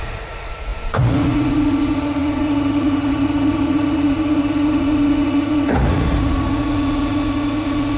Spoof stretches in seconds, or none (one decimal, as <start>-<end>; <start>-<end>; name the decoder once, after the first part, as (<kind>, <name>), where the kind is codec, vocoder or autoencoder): 0.0-8.0 (vocoder, Vocos)